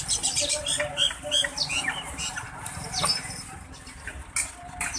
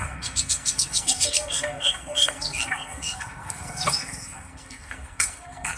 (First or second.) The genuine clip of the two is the first